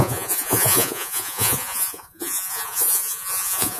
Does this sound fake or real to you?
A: fake